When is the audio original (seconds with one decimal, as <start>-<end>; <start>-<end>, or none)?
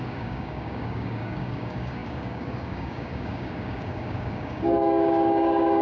none